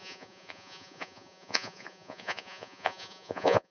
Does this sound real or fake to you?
fake